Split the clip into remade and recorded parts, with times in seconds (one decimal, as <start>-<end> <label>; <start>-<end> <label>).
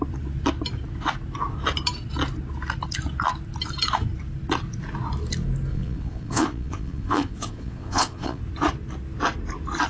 0.0-5.7 recorded; 5.7-8.4 remade; 8.4-9.9 recorded